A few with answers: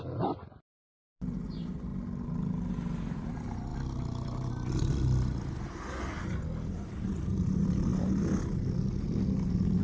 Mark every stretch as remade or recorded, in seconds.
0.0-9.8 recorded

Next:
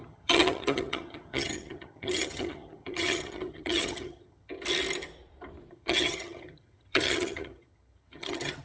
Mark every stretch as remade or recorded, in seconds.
0.0-4.5 remade; 4.5-5.7 recorded; 5.7-8.6 remade

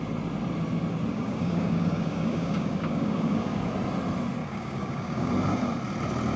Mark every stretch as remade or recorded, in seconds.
0.0-1.1 recorded; 1.1-3.7 remade; 3.7-4.4 recorded; 4.4-5.3 remade; 5.3-6.4 recorded

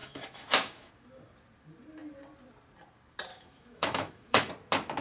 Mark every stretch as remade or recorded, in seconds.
0.0-0.9 remade; 0.9-3.3 recorded; 3.3-4.5 remade; 4.5-5.0 recorded

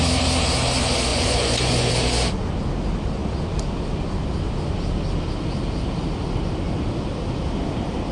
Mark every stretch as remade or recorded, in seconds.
0.0-1.1 recorded; 1.1-1.9 remade; 1.9-8.1 recorded

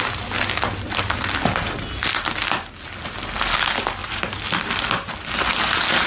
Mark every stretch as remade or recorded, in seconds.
0.0-4.0 recorded; 4.0-4.7 remade; 4.7-6.1 recorded